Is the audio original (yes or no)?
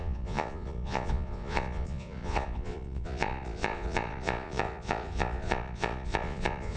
no